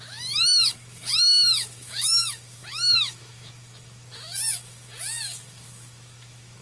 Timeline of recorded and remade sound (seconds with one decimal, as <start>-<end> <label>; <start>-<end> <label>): 0.0-6.6 remade